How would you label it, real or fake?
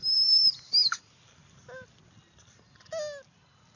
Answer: real